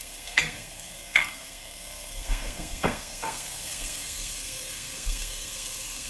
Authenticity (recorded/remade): remade